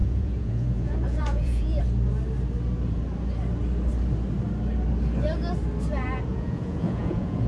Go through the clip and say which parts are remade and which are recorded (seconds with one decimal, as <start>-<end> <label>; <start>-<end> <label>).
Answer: 0.0-1.8 remade; 1.8-6.3 recorded; 6.3-7.5 remade